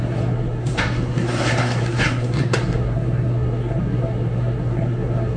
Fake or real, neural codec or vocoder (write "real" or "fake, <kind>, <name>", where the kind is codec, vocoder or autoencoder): fake, codec, SNAC